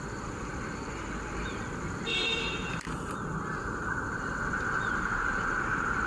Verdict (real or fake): fake